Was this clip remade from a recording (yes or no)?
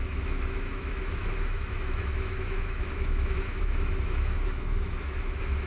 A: yes